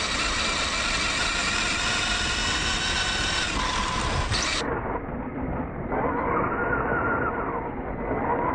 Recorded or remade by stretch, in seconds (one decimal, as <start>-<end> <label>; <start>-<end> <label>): 0.0-6.6 recorded; 6.6-7.2 remade; 7.2-8.5 recorded